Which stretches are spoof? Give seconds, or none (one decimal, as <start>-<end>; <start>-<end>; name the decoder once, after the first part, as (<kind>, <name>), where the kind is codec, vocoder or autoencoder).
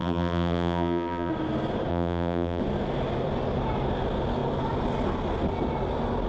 0.0-1.3 (vocoder, BigVGAN v2); 1.9-2.6